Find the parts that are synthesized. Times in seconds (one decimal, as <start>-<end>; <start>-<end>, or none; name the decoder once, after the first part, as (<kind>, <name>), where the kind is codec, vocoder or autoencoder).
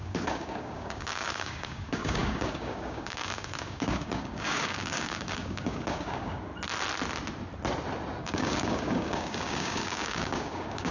0.0-6.5 (codec, DAC); 8.2-10.9